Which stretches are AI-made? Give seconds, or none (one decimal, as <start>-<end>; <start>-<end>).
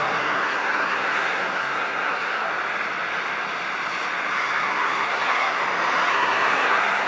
0.0-2.5; 4.3-5.6; 6.1-7.1